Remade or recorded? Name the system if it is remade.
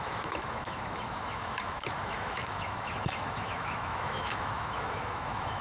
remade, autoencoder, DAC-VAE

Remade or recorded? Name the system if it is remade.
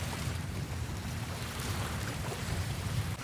remade, vocoder, BigVGAN v2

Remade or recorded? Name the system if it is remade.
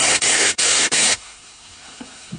remade, codec, SNAC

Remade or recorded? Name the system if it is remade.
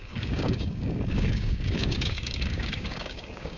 remade, codec, DAC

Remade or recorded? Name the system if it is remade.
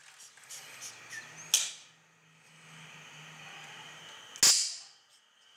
recorded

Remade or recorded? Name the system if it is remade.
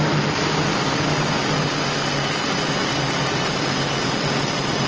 recorded